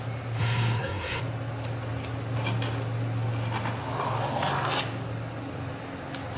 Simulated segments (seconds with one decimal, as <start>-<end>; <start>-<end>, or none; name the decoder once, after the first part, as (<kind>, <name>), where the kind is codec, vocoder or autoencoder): 0.4-1.2 (codec, SNAC)